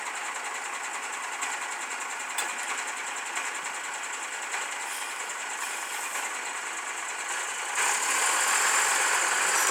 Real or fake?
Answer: real